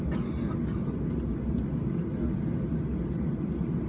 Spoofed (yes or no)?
no